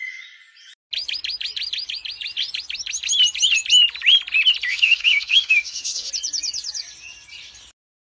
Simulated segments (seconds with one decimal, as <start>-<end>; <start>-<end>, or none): 4.7-6.1